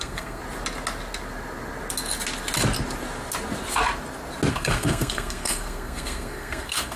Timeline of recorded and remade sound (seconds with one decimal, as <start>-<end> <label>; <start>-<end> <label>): 0.0-0.4 remade; 0.4-4.5 recorded; 4.5-7.0 remade